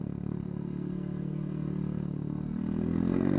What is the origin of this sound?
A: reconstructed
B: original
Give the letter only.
A